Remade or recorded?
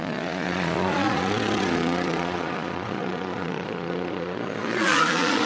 remade